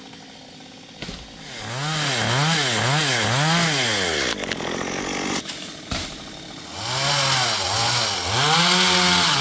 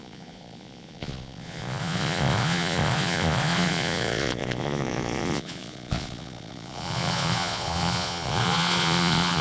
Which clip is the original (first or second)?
first